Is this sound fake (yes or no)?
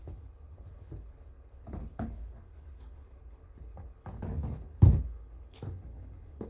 yes